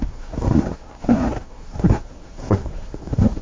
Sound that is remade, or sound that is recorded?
remade